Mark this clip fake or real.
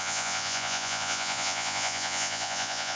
fake